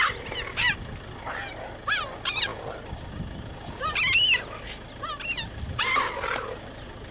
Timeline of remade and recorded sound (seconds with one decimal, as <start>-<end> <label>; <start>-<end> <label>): 0.0-7.1 recorded